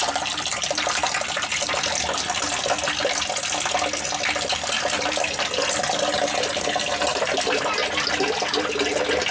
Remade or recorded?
recorded